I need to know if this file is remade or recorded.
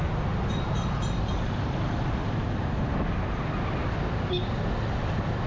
recorded